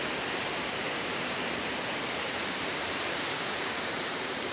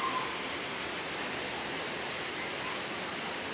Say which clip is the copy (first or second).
first